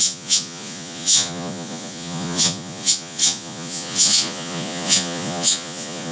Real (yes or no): no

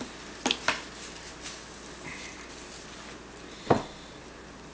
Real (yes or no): yes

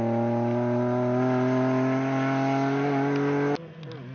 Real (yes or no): yes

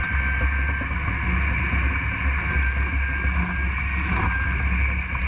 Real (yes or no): yes